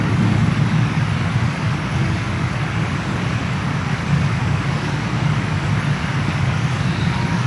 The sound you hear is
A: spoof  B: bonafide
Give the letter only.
A